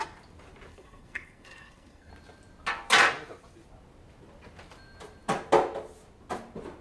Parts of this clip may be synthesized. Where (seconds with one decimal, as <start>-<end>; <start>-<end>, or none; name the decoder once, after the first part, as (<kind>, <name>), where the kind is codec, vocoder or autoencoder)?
0.7-2.1 (codec, SNAC)